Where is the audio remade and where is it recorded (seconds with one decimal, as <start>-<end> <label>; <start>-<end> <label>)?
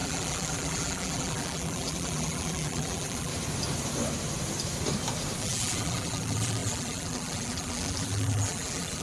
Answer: 0.0-3.3 remade; 3.3-5.4 recorded; 5.4-9.0 remade